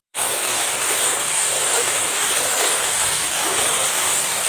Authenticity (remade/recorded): remade